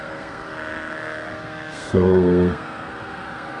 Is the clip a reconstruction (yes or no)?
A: yes